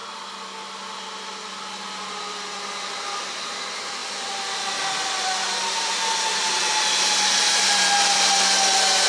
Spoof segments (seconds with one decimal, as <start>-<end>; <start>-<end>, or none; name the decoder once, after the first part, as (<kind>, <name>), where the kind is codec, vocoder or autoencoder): none